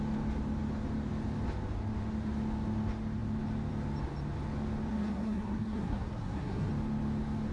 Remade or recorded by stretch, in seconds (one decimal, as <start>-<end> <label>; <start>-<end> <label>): 0.0-4.9 recorded; 4.9-6.7 remade; 6.7-7.5 recorded